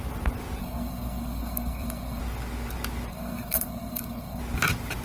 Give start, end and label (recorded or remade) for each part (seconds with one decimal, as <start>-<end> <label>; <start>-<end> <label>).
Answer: 0.0-0.6 recorded; 0.6-2.2 remade; 2.2-3.1 recorded; 3.1-4.4 remade; 4.4-5.0 recorded